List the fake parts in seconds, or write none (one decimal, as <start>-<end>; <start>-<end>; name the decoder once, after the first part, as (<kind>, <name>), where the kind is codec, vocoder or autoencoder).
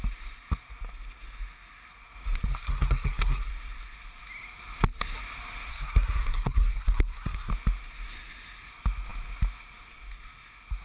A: 2.5-3.5 (codec, SNAC); 5.7-7.5